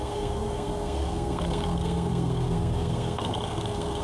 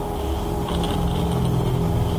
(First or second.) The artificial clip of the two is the first